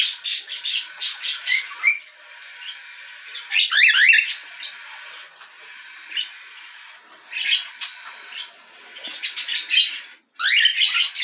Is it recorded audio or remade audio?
recorded